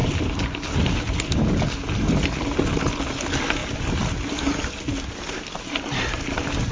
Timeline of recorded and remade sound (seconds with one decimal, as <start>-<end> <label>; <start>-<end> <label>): 0.0-6.7 recorded